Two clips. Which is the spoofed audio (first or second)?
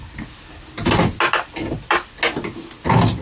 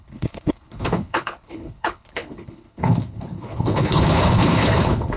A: second